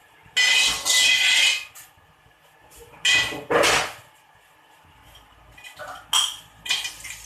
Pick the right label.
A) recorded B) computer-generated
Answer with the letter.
A